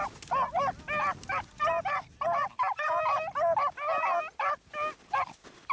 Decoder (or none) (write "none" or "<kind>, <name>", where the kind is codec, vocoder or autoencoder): none